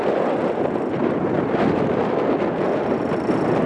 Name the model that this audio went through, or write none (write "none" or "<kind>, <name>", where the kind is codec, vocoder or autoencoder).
none